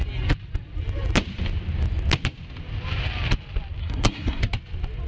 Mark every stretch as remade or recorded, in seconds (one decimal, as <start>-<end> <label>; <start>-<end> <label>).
0.0-3.8 recorded; 3.8-4.4 remade; 4.4-5.1 recorded